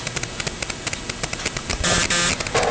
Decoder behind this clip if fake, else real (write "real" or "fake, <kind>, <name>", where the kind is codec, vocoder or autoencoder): real